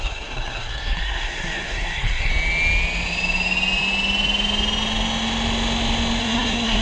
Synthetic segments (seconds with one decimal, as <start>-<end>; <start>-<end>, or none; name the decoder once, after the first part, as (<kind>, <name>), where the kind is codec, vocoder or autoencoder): 0.0-2.3 (codec, SNAC); 6.2-6.8